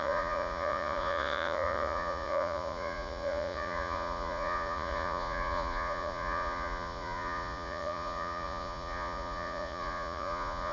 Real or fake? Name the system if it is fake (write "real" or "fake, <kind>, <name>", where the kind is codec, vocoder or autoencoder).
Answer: fake, vocoder, Vocos